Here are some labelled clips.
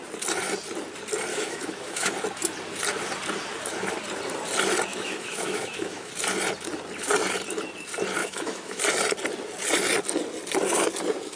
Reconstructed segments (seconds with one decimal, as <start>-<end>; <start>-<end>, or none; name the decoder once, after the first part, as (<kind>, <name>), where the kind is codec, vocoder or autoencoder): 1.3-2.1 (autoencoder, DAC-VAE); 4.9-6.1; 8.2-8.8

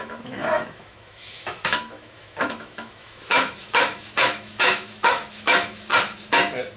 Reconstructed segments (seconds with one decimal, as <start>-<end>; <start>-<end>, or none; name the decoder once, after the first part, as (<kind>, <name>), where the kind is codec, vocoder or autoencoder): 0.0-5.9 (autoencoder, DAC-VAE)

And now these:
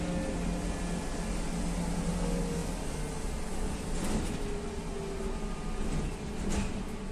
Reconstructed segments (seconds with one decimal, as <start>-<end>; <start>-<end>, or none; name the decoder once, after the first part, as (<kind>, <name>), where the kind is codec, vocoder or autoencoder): none

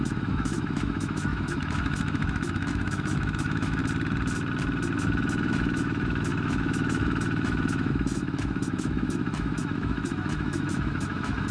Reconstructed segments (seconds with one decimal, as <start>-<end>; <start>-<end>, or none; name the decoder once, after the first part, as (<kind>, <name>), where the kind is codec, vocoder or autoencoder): 0.0-3.8 (autoencoder, DAC-VAE); 5.0-11.5

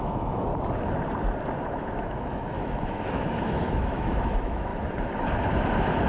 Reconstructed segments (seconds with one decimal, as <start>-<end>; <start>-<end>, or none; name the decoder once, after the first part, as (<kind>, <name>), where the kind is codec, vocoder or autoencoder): 0.0-0.5 (autoencoder, DAC-VAE); 1.7-4.7

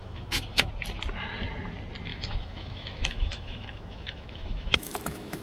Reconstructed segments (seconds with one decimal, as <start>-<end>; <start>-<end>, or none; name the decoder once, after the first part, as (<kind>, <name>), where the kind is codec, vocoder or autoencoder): 0.0-0.7 (autoencoder, DAC-VAE); 2.1-5.4

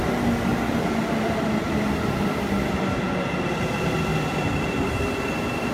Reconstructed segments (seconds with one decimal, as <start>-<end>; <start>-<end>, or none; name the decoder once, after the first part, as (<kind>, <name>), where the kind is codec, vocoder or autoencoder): none